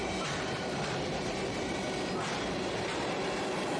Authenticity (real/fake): real